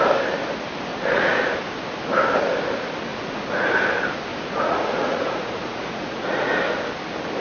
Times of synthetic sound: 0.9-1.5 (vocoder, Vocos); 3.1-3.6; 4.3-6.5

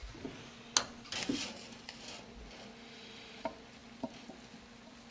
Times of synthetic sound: none